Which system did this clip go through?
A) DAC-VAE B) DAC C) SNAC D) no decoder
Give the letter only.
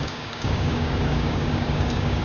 B